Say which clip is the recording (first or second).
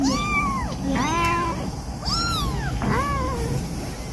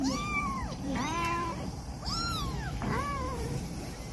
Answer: first